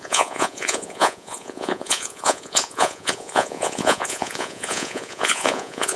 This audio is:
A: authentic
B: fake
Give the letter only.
B